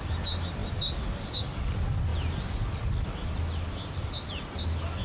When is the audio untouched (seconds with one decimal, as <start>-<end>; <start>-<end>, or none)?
0.0-5.0